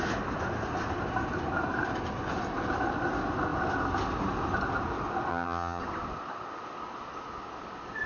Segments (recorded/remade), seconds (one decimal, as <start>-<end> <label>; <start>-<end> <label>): 0.0-5.3 recorded; 5.3-5.8 remade; 5.8-8.1 recorded